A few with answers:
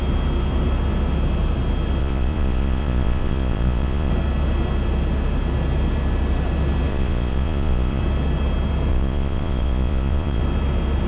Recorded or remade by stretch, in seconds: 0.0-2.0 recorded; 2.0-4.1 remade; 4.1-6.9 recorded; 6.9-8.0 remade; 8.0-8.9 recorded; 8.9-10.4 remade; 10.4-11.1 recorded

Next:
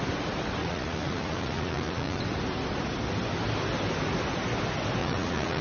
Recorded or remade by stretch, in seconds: 0.0-0.6 recorded; 0.6-2.2 remade; 2.2-5.0 recorded; 5.0-5.6 remade

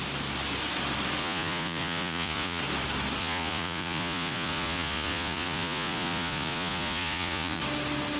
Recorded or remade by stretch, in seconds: 0.0-1.2 recorded; 1.2-2.6 remade; 2.6-3.2 recorded; 3.2-7.6 remade; 7.6-8.2 recorded

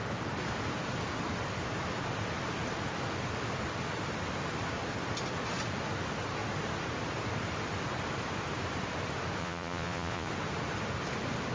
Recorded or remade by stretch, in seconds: 0.0-9.4 recorded; 9.4-10.3 remade; 10.3-11.5 recorded

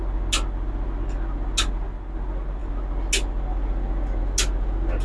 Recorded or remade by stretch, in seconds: 0.0-5.0 recorded

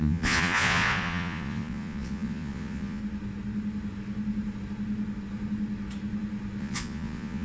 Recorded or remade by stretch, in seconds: 0.0-3.0 remade; 3.0-6.6 recorded; 6.6-7.4 remade

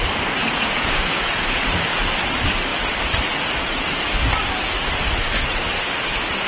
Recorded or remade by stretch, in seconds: 0.0-0.4 recorded; 0.4-1.6 remade; 1.6-6.5 recorded